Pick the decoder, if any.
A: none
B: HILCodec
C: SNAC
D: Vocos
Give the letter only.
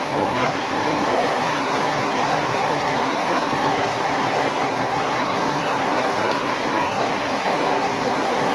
C